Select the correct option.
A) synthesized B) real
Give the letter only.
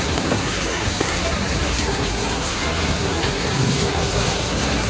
A